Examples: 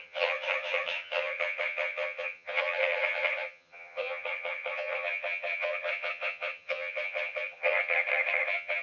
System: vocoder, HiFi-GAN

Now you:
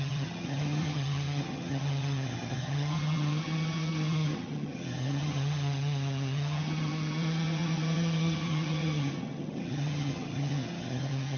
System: vocoder, HiFi-GAN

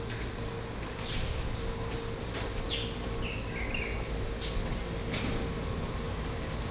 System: none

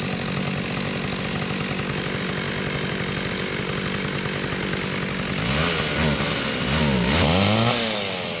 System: none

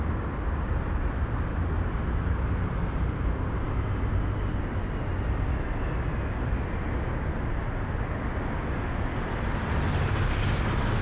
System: none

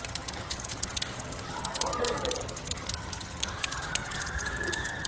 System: vocoder, HiFi-GAN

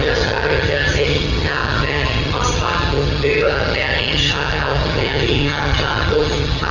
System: vocoder, HiFi-GAN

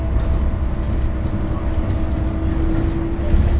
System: none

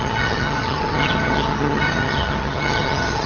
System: vocoder, HiFi-GAN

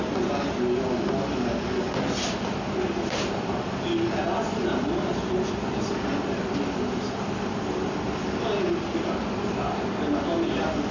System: none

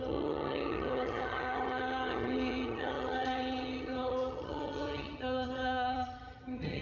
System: vocoder, HiFi-GAN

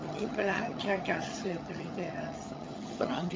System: vocoder, HiFi-GAN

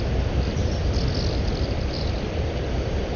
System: none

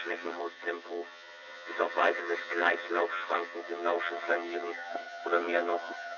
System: vocoder, HiFi-GAN